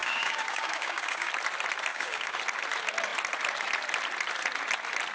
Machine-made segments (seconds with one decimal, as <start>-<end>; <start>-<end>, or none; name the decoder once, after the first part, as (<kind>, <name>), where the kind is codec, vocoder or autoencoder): 0.0-1.3 (codec, DAC); 1.9-2.4